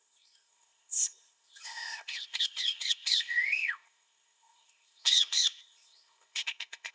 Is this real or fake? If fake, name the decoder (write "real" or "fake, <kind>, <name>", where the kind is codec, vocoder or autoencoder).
fake, codec, ZipCodec